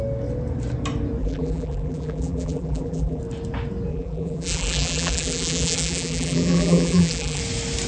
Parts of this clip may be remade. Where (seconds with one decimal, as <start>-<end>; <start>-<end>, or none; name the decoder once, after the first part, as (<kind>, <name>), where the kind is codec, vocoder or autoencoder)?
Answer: 1.2-3.2 (vocoder, BigVGAN v2); 3.9-7.4